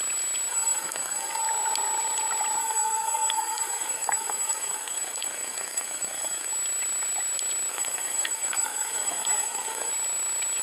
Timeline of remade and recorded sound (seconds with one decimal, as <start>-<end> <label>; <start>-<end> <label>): 0.0-0.5 recorded; 0.5-1.4 remade; 1.4-2.6 recorded; 2.6-6.5 remade; 6.5-7.7 recorded; 7.7-9.9 remade; 9.9-10.6 recorded